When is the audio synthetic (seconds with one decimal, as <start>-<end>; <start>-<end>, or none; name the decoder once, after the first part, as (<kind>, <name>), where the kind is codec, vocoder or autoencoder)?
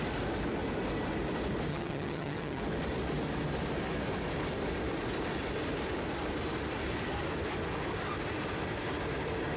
1.7-2.6 (vocoder, HiFi-GAN)